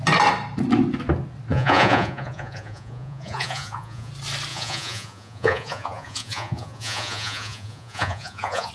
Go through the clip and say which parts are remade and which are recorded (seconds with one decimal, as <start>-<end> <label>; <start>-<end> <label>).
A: 0.0-1.5 recorded; 1.5-4.1 remade; 4.1-4.5 recorded; 4.5-8.7 remade